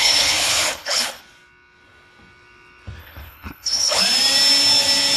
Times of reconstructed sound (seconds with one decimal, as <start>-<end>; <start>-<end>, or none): 0.0-1.2; 3.0-4.0